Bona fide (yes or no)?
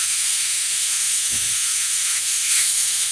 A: no